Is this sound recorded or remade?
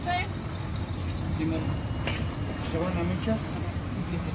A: recorded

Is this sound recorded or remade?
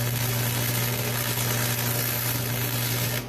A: recorded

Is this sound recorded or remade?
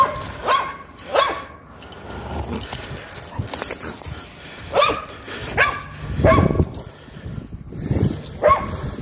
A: recorded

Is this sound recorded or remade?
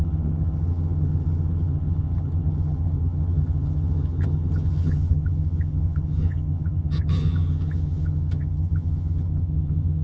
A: remade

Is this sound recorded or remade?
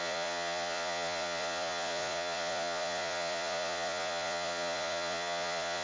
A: remade